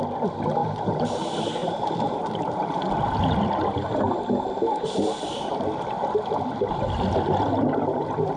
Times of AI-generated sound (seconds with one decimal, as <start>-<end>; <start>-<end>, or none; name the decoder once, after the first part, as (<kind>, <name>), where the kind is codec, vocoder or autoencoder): 0.6-1.2 (vocoder, BigVGAN v2); 1.6-2.8